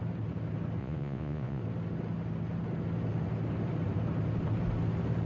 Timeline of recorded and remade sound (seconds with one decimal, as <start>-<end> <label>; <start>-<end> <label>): 0.0-0.8 recorded; 0.8-1.6 remade; 1.6-5.2 recorded